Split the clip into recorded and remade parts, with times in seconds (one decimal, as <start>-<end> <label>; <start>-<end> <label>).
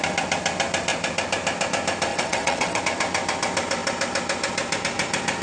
0.0-2.1 recorded; 2.1-2.8 remade; 2.8-5.4 recorded